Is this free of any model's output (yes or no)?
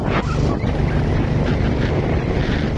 yes